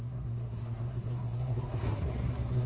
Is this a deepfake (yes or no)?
yes